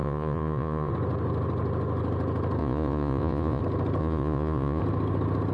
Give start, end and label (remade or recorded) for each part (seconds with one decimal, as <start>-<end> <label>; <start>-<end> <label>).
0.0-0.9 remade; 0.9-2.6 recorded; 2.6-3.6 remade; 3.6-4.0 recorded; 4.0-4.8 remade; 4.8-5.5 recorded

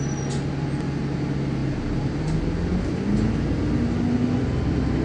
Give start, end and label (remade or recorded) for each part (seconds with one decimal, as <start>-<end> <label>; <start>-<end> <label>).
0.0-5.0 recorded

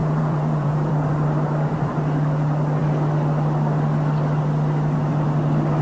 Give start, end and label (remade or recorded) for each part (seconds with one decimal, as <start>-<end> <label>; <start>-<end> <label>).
0.0-0.9 remade; 0.9-5.8 recorded

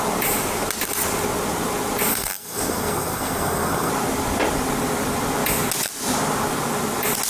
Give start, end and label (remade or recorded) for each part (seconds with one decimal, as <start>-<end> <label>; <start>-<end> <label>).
0.0-2.1 recorded; 2.1-3.9 remade; 3.9-7.3 recorded